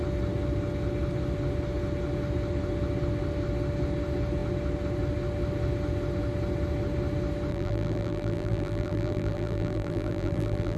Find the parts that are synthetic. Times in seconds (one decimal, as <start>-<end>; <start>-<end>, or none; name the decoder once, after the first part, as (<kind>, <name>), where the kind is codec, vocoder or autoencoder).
7.5-10.8 (vocoder, BigVGAN v2)